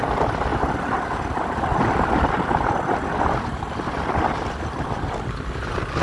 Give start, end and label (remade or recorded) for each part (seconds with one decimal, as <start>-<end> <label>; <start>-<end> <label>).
0.0-6.0 recorded